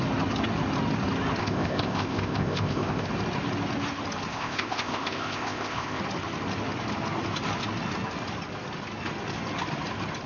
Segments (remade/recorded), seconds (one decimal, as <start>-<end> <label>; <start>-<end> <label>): 0.0-1.4 recorded; 1.4-3.1 remade; 3.1-4.3 recorded; 4.3-6.0 remade; 6.0-10.3 recorded